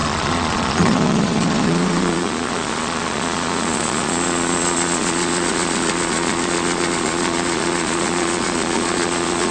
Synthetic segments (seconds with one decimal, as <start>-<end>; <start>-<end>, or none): 0.0-9.5

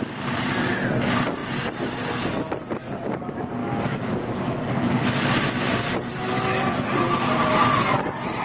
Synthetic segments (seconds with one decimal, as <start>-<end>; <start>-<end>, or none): 3.6-4.9

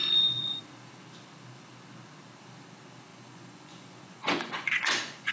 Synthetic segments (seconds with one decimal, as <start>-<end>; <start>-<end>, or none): 0.0-0.6; 3.1-5.3

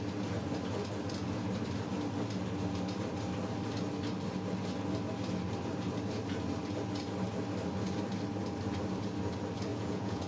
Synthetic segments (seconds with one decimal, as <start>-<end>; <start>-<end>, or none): 9.7-10.3

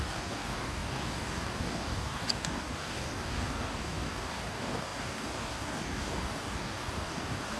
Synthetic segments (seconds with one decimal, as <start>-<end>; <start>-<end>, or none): 0.0-7.6

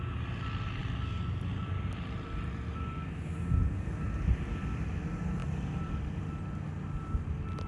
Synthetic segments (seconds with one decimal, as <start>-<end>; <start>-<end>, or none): none

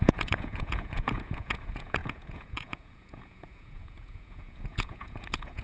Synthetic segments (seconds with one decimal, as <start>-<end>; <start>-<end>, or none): 0.0-5.6

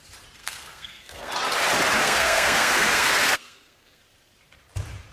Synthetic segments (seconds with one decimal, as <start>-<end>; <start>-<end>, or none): 0.4-1.3; 2.0-4.0